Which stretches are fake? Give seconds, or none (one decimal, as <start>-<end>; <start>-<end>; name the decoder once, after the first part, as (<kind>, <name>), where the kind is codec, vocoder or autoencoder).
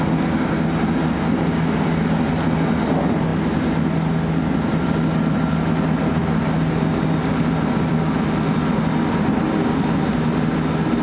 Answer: none